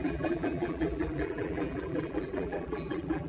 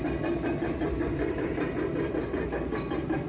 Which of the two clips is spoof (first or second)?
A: first